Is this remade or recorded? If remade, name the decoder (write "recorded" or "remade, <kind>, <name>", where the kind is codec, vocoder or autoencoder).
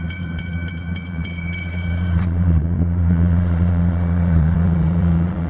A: remade, vocoder, Vocos